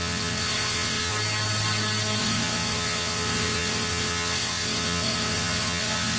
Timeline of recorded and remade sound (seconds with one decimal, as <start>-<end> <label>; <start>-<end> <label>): 0.0-1.1 remade; 1.1-2.2 recorded; 2.2-6.2 remade